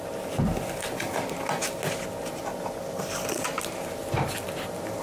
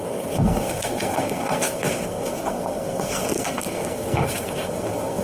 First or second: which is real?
first